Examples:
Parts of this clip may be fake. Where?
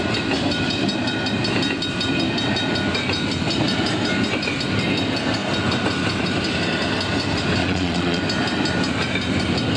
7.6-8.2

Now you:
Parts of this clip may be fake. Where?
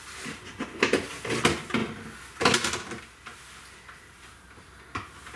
none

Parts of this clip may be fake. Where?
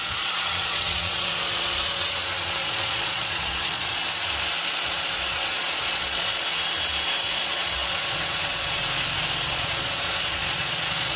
0.0-4.0; 4.7-6.4; 7.2-8.8; 9.5-11.2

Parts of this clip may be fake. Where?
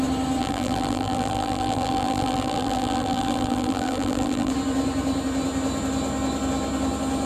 0.4-4.5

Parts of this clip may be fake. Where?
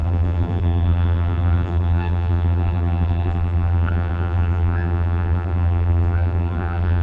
0.0-7.0